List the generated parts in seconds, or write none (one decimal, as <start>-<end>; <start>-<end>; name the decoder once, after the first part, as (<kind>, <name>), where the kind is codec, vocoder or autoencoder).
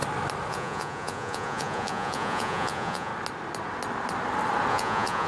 0.5-3.1 (vocoder, Vocos); 4.7-5.3